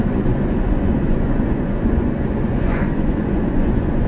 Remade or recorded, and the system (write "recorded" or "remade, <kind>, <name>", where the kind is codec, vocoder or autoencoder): remade, vocoder, Vocos